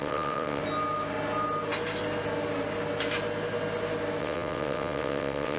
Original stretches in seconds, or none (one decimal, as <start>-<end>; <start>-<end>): 0.6-4.2